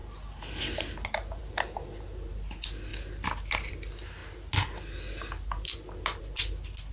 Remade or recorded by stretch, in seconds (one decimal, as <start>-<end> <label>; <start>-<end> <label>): 0.0-6.9 recorded